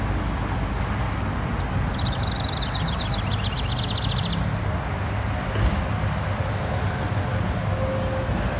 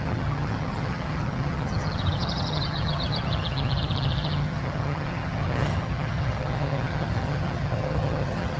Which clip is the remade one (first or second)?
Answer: second